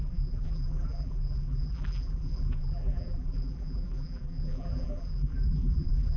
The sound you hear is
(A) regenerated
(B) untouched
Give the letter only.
A